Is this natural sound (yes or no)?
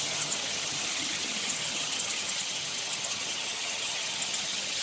no